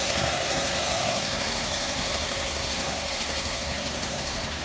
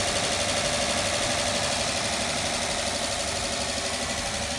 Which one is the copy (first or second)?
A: first